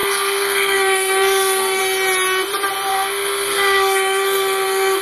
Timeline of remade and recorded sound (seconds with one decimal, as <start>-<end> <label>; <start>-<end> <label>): 0.0-1.8 remade; 1.8-2.9 recorded; 2.9-5.0 remade